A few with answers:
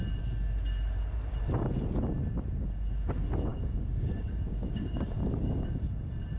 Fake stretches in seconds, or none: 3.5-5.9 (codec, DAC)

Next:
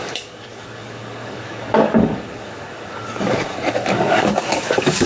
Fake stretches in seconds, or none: 0.0-5.1 (codec, DAC)

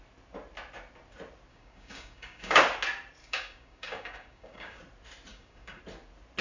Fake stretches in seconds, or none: 1.5-2.6 (codec, DAC); 3.2-4.8; 5.3-5.8

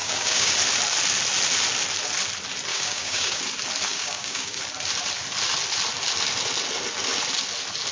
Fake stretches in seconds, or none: 0.0-0.5 (codec, DAC); 2.7-3.4; 3.9-4.6